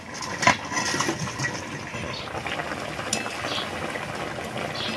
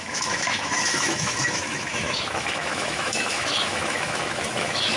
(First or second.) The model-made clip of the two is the second